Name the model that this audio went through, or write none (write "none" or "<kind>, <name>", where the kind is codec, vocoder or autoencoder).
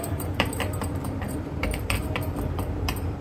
vocoder, BigVGAN v2